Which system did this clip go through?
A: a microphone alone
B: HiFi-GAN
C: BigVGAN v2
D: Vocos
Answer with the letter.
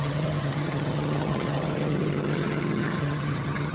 B